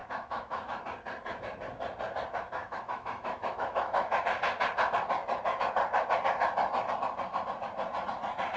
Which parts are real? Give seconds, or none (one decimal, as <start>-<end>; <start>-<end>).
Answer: 0.8-2.6; 4.2-8.6